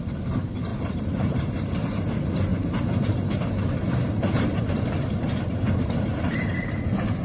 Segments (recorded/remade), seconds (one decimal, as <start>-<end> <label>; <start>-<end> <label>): 0.0-0.7 recorded; 0.7-2.0 remade; 2.0-2.5 recorded; 2.5-6.8 remade; 6.8-7.2 recorded